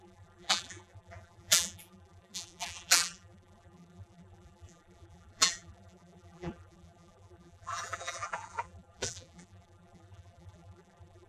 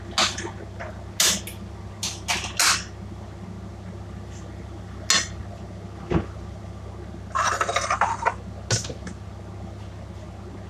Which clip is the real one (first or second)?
second